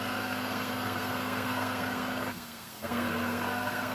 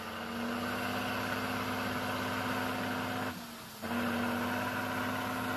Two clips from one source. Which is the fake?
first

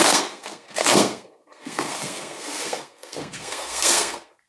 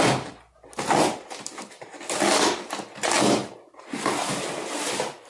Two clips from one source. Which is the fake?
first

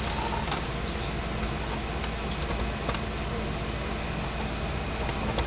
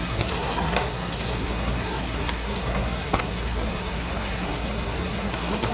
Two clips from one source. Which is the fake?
second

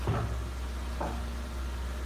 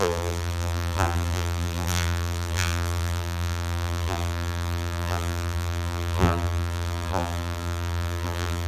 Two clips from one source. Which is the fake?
second